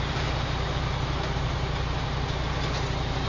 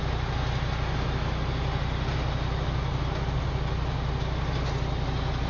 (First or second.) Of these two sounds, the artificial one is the first